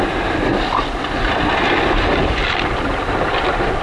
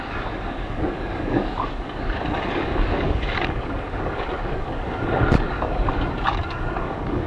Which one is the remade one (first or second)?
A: second